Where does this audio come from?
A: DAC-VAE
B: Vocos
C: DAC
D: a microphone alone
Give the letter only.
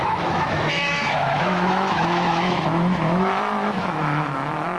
A